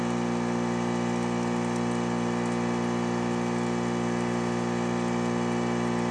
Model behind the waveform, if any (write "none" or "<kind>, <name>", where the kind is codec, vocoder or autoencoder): none